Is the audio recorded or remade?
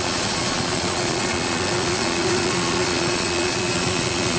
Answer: remade